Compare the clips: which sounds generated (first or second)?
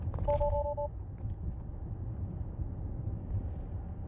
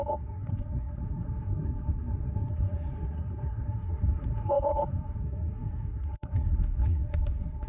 second